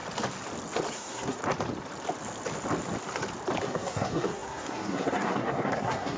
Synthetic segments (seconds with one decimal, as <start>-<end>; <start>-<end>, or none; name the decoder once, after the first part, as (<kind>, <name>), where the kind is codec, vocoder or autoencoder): 0.9-1.4 (codec, SNAC); 3.6-6.2